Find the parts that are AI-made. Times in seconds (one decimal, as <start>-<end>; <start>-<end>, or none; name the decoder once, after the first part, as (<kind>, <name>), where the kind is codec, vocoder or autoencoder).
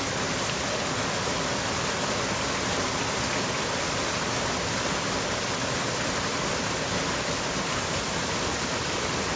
none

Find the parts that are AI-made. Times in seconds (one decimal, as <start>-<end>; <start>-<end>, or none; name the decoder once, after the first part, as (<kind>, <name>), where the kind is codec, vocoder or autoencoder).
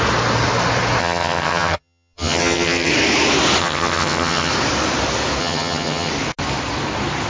1.0-2.9 (vocoder, HiFi-GAN); 3.6-4.5; 5.4-6.1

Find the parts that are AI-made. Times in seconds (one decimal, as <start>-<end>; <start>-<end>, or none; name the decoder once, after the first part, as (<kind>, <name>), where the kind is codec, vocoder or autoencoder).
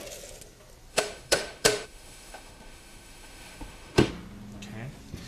0.9-4.1 (autoencoder, DAC-VAE)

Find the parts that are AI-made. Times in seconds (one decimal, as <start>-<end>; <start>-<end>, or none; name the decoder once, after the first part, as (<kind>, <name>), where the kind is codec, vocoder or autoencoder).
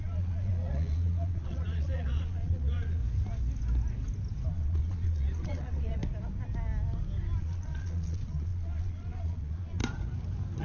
0.0-3.0 (vocoder, Vocos); 4.5-6.0; 7.4-9.8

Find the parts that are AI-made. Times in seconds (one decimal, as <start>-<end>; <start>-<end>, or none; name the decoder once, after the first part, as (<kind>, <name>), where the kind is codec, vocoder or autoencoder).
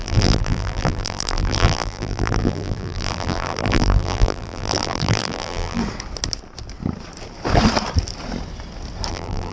0.0-5.8 (vocoder, BigVGAN v2); 9.1-9.5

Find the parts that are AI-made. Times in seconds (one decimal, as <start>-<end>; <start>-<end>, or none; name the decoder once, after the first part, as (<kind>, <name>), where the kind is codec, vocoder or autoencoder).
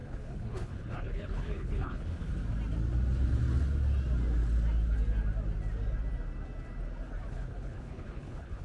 0.0-2.3 (codec, HILCodec); 7.3-8.6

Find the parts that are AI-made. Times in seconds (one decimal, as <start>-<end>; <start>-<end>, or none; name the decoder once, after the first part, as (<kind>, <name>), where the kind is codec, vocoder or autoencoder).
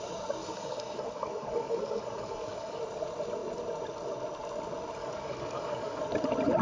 0.4-2.8 (codec, DAC); 5.0-6.0